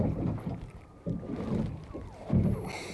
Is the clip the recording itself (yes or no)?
yes